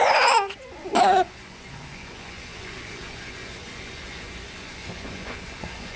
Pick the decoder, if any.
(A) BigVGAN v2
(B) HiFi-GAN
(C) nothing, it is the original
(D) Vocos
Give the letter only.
D